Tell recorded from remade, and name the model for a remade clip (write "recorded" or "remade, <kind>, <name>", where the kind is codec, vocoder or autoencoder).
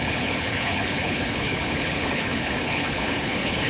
remade, codec, HILCodec